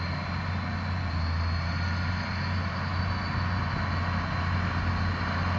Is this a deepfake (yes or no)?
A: no